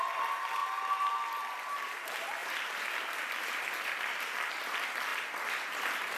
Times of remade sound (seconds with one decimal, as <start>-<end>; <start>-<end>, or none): 5.1-6.2